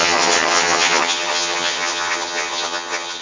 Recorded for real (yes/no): no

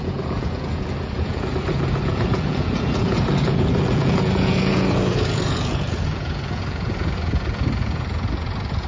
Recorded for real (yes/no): no